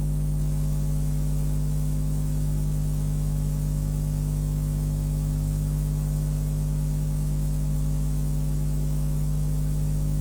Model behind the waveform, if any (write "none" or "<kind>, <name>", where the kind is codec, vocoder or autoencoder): autoencoder, DAC-VAE